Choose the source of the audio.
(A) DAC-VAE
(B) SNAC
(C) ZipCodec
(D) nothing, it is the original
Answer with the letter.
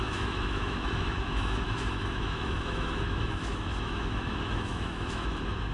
A